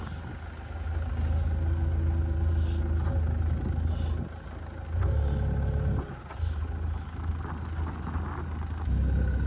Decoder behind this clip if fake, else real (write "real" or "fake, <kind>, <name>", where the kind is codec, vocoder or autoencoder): real